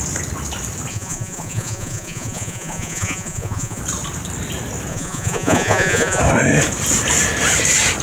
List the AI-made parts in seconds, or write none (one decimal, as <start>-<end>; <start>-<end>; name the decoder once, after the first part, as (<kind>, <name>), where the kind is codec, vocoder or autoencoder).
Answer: 0.9-3.8 (vocoder, Vocos); 4.9-6.2